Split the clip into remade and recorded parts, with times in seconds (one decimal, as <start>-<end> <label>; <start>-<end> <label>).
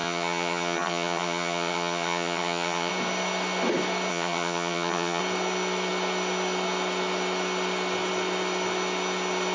0.0-2.9 remade; 2.9-4.1 recorded; 4.1-5.2 remade; 5.2-9.5 recorded